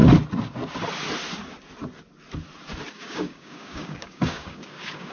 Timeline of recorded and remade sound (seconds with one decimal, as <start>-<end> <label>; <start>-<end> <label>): 0.0-2.9 recorded; 2.9-5.1 remade